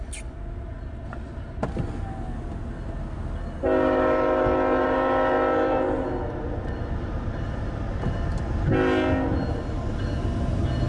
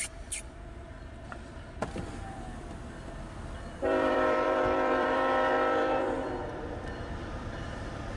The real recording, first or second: first